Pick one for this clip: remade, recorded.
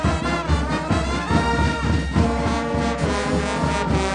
recorded